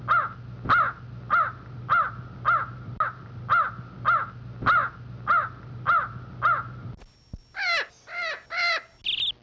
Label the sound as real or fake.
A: real